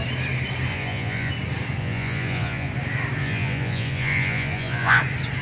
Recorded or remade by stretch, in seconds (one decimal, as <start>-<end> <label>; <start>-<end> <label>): 0.0-0.7 recorded; 0.7-1.3 remade; 1.3-1.8 recorded; 1.8-2.7 remade; 2.7-3.2 recorded; 3.2-5.0 remade; 5.0-5.4 recorded